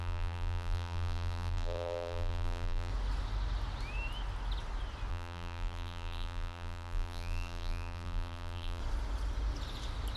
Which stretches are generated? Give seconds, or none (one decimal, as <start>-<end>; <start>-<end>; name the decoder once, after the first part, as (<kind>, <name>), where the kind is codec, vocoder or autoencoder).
0.0-2.9 (vocoder, BigVGAN v2); 5.1-8.8